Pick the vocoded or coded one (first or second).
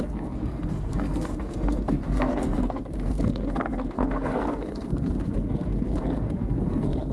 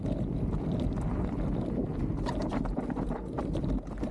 first